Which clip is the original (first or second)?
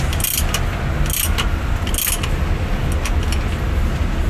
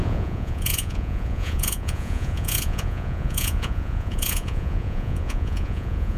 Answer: first